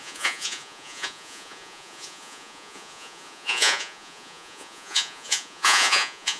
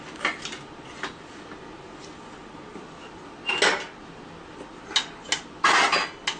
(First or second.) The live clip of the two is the second